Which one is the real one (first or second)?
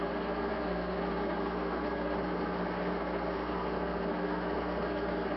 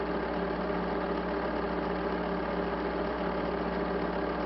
second